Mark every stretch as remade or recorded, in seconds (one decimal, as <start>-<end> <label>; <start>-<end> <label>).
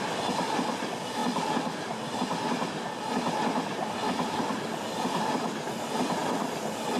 0.0-1.2 recorded; 1.2-4.1 remade; 4.1-6.2 recorded; 6.2-7.0 remade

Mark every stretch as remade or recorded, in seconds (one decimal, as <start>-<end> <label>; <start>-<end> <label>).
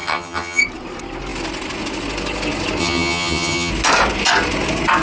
0.0-0.6 remade; 0.6-2.8 recorded; 2.8-3.7 remade; 3.7-5.0 recorded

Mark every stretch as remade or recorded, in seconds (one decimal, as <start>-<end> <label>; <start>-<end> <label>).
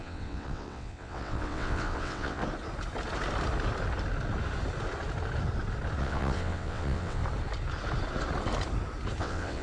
0.0-2.4 remade; 2.4-6.0 recorded; 6.0-7.2 remade; 7.2-9.2 recorded; 9.2-9.6 remade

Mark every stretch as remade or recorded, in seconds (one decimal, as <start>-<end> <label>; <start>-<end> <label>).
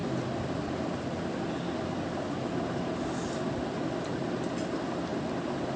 0.0-5.8 recorded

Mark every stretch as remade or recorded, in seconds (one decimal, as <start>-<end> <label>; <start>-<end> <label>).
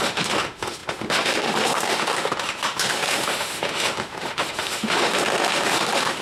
0.0-6.2 remade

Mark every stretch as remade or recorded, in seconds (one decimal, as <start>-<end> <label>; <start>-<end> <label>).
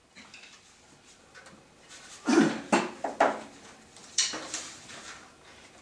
0.0-4.0 recorded; 4.0-5.3 remade; 5.3-5.8 recorded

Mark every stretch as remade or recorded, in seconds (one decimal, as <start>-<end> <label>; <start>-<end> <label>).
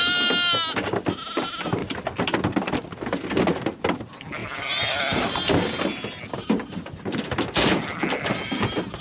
0.0-1.8 recorded; 1.8-2.7 remade; 2.7-4.4 recorded; 4.4-6.2 remade; 6.2-9.0 recorded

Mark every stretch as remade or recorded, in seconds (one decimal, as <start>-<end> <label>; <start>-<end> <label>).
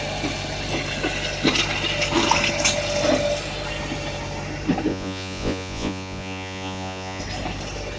0.0-4.9 recorded; 4.9-7.2 remade; 7.2-8.0 recorded